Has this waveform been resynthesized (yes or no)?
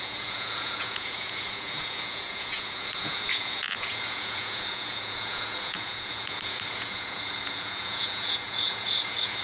yes